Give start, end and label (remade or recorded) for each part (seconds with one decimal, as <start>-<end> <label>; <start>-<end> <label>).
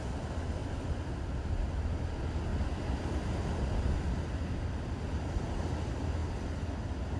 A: 0.0-0.6 recorded; 0.6-1.2 remade; 1.2-2.5 recorded; 2.5-5.3 remade; 5.3-7.2 recorded